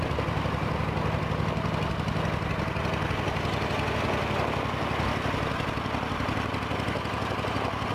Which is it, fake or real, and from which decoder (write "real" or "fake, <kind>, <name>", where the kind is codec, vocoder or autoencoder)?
real